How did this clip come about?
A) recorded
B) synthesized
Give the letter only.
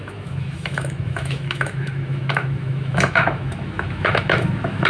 B